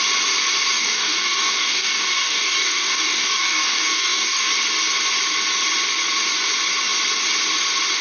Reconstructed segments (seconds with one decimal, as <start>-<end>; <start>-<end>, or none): 0.8-4.5